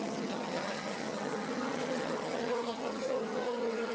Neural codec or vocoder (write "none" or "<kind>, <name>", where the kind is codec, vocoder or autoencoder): vocoder, HiFi-GAN